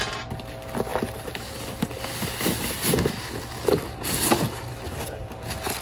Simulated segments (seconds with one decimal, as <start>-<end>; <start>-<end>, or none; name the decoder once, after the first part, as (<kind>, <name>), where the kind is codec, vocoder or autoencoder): none